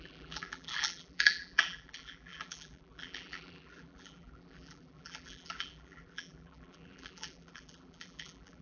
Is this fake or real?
fake